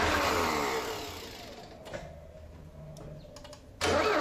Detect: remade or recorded recorded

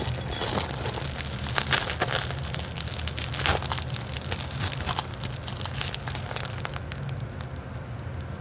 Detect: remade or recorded recorded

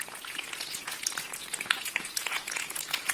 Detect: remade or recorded remade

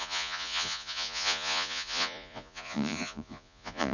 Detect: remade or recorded remade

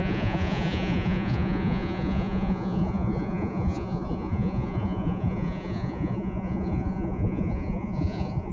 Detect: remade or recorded remade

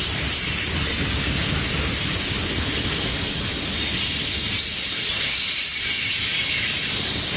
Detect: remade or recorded recorded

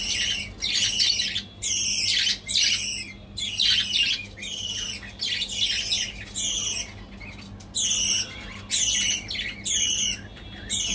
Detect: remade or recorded recorded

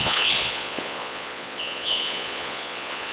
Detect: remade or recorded remade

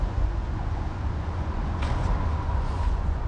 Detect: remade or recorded remade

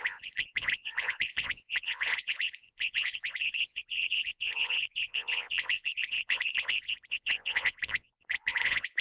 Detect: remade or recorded remade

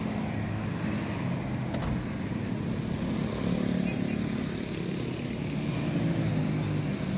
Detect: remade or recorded recorded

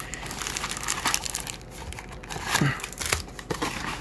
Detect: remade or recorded recorded